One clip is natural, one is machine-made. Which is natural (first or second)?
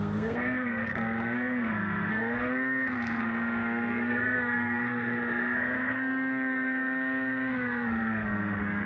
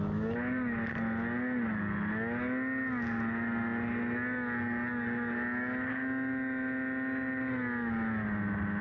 second